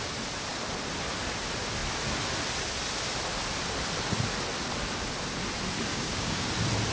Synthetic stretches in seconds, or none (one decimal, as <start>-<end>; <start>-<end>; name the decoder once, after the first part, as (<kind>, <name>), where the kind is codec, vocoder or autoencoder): 5.9-6.5 (codec, DAC)